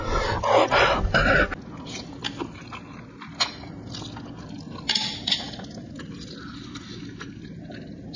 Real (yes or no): yes